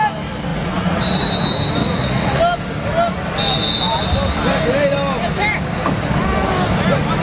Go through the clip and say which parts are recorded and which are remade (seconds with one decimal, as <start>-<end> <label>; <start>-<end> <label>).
0.0-0.5 recorded; 0.5-1.3 remade; 1.3-1.8 recorded; 1.8-2.4 remade; 2.4-7.2 recorded

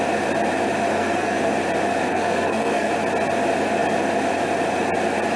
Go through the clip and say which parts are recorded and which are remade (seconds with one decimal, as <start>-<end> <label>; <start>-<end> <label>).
0.0-0.9 recorded; 0.9-1.4 remade; 1.4-2.1 recorded; 2.1-2.9 remade; 2.9-5.4 recorded

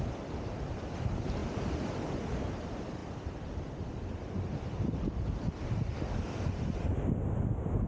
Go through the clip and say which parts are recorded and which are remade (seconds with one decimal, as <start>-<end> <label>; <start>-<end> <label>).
0.0-7.9 recorded